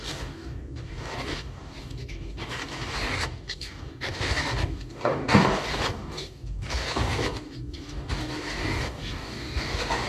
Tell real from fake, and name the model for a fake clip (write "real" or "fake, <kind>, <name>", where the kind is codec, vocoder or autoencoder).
fake, codec, DAC